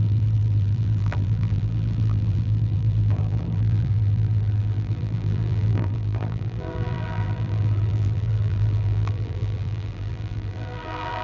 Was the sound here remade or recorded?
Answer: remade